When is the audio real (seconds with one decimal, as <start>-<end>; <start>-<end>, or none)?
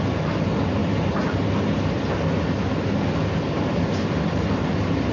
0.0-5.1